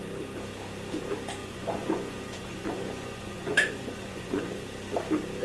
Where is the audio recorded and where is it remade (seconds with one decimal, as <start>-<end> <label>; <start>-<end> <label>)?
0.0-1.4 recorded; 1.4-4.6 remade; 4.6-5.4 recorded